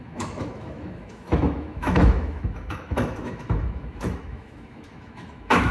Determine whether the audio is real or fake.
fake